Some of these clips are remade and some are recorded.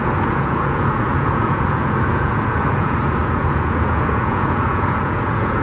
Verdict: remade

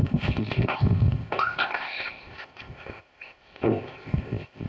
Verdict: remade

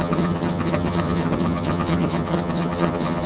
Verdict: remade